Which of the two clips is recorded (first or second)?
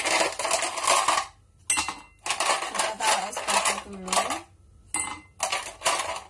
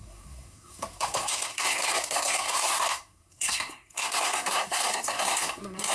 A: first